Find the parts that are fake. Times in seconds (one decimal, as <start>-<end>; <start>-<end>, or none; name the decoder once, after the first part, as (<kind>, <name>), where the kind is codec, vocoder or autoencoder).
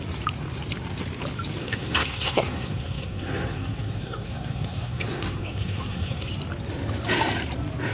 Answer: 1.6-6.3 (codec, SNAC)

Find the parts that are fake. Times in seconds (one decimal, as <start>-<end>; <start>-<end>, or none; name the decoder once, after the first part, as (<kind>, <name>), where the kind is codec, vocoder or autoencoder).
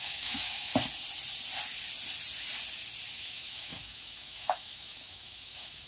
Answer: 0.0-0.7 (autoencoder, DAC-VAE); 3.1-5.9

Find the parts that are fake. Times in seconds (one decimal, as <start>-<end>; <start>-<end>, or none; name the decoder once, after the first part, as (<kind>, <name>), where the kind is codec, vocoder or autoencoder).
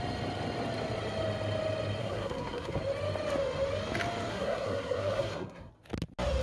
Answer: 2.0-2.8 (codec, SNAC); 4.3-5.7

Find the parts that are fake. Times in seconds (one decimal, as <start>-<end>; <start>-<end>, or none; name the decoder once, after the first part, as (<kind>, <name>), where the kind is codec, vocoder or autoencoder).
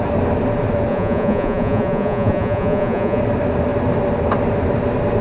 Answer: 0.9-3.2 (vocoder, Vocos)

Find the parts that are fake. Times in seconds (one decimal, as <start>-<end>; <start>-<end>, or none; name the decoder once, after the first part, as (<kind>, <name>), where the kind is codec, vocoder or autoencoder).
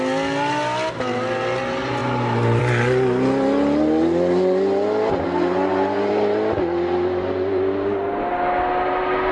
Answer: none